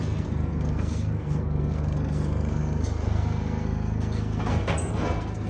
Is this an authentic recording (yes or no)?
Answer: no